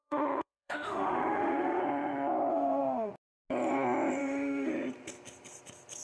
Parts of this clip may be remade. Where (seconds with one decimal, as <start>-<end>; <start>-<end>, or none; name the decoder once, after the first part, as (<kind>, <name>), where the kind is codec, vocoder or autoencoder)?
0.0-1.8 (autoencoder, DAC-VAE); 2.5-3.1; 4.2-4.7